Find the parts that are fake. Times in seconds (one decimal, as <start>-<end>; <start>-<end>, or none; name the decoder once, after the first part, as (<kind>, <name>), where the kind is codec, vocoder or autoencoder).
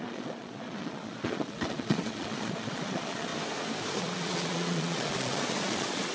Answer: 0.0-3.3 (vocoder, Vocos); 4.0-6.1